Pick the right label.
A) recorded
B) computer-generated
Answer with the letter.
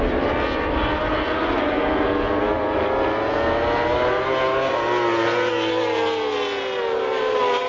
A